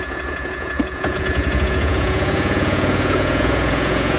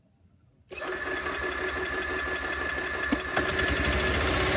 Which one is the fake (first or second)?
first